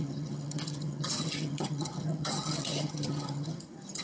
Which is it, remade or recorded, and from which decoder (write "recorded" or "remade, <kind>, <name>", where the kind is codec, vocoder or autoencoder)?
remade, vocoder, HiFi-GAN